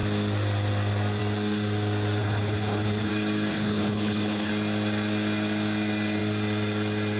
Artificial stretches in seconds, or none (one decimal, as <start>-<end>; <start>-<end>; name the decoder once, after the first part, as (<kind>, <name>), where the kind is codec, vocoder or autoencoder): 2.2-3.1 (codec, HILCodec); 3.5-4.5